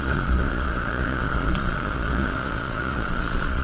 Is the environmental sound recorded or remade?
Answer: remade